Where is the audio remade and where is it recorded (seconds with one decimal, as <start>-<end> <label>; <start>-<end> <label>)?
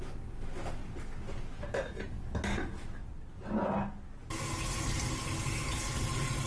0.0-6.5 recorded